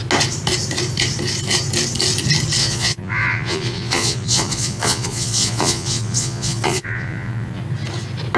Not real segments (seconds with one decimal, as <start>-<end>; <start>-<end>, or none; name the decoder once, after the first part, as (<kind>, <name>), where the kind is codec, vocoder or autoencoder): 2.6-7.6 (vocoder, Vocos)